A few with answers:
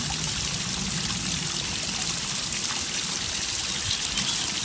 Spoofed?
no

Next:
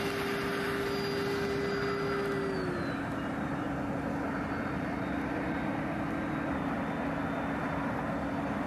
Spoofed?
no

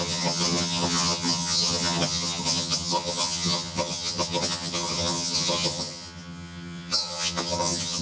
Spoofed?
yes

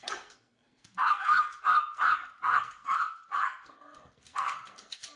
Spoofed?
yes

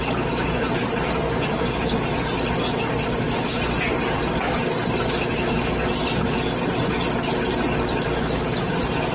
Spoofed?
no